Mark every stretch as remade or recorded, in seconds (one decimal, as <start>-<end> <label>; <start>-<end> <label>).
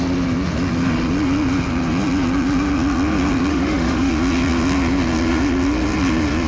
0.0-3.5 recorded; 3.5-4.1 remade; 4.1-6.5 recorded